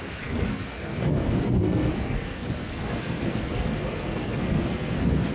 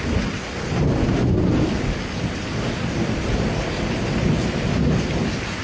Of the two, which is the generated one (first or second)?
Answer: first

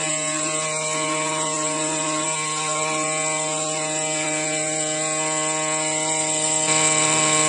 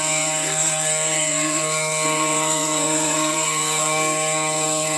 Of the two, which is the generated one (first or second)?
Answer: second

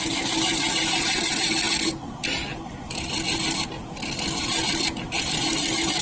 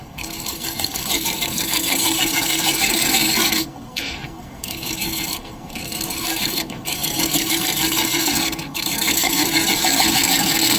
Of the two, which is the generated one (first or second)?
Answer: second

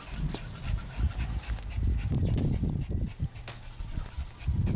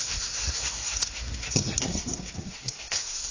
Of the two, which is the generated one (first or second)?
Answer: second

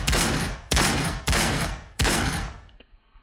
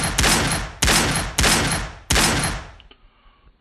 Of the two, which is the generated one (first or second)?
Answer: first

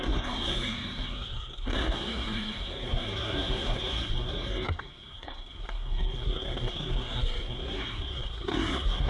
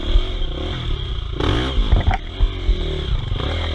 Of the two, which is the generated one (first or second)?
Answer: first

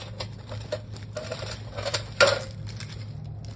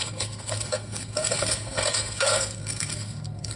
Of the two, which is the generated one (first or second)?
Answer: second